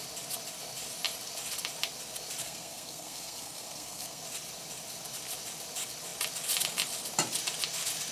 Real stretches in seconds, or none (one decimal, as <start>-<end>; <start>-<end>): 0.0-2.4; 4.2-8.1